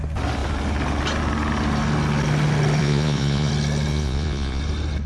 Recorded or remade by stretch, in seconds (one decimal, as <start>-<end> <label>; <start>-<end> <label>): 0.0-2.8 recorded; 2.8-3.5 remade; 3.5-3.9 recorded; 3.9-4.6 remade; 4.6-5.1 recorded